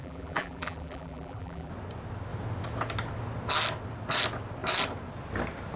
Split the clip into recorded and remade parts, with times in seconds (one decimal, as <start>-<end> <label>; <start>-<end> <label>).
0.0-1.7 remade; 1.7-5.8 recorded